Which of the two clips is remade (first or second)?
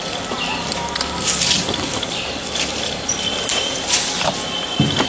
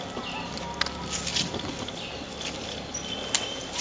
first